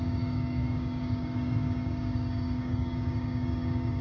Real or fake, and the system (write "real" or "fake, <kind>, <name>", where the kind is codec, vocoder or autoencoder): fake, codec, DAC